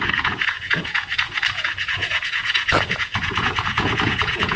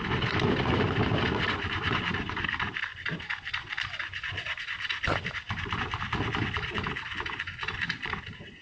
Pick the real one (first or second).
second